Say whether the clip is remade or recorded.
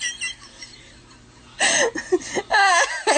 recorded